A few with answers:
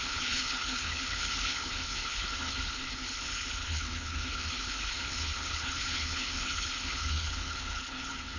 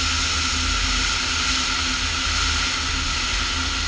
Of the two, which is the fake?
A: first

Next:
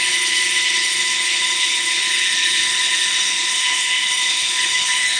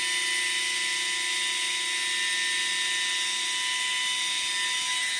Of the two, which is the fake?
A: first